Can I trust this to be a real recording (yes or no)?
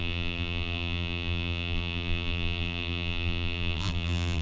no